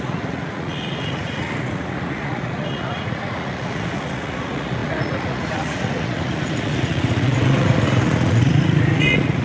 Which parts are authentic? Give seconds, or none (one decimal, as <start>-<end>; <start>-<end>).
none